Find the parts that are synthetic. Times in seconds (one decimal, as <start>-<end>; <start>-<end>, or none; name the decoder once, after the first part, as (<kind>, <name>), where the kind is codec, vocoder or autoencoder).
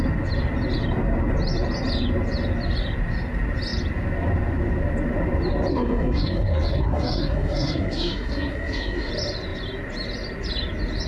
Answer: 5.7-9.1 (codec, SNAC)